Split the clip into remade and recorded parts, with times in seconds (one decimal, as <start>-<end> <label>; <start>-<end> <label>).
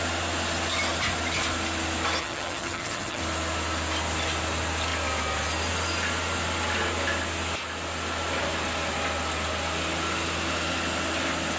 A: 0.0-2.2 recorded; 2.2-3.2 remade; 3.2-11.6 recorded